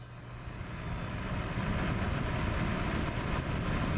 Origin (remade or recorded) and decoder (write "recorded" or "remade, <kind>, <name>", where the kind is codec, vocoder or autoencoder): recorded